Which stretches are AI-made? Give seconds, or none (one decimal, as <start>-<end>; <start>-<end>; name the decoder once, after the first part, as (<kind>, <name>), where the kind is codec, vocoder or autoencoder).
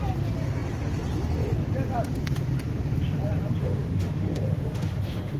3.6-5.4 (autoencoder, DAC-VAE)